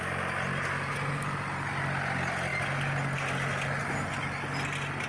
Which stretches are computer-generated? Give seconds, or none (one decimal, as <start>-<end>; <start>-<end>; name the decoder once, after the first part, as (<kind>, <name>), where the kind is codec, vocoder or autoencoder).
none